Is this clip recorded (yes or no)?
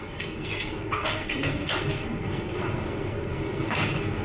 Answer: no